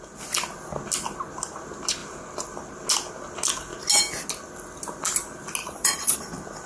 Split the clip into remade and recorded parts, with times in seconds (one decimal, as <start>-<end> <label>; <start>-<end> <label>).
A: 0.0-5.6 recorded; 5.6-6.3 remade; 6.3-6.7 recorded